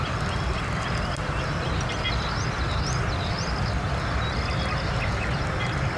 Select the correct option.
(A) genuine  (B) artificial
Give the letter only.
A